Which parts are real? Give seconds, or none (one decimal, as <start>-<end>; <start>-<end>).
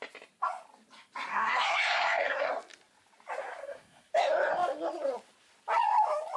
0.0-1.3; 2.5-3.4; 4.1-6.4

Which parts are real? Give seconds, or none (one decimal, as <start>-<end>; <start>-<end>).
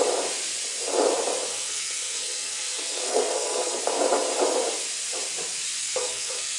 0.0-1.5; 3.8-5.8